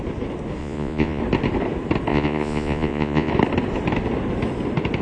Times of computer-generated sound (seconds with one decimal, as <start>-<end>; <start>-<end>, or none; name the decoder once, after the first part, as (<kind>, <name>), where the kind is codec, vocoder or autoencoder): 0.6-1.2 (vocoder, Vocos); 2.1-3.3